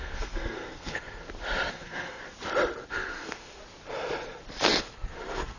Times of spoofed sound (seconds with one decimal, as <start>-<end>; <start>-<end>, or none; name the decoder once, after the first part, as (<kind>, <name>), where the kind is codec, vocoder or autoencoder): 0.0-1.2 (codec, SNAC); 1.7-2.2; 2.9-3.6; 4.8-5.6